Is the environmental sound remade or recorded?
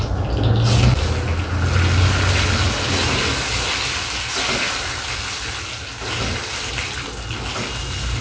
recorded